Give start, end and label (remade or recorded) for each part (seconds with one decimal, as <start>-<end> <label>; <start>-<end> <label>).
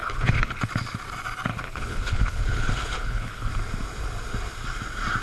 0.0-0.6 remade; 0.6-1.5 recorded; 1.5-3.5 remade; 3.5-5.2 recorded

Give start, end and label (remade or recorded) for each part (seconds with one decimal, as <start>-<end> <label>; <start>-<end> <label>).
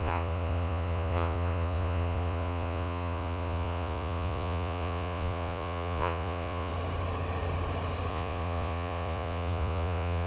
0.0-6.7 remade; 6.7-8.1 recorded; 8.1-10.3 remade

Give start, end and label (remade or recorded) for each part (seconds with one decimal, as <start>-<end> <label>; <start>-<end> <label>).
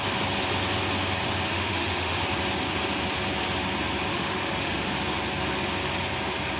0.0-1.5 recorded; 1.5-2.2 remade; 2.2-4.1 recorded; 4.1-4.9 remade; 4.9-6.6 recorded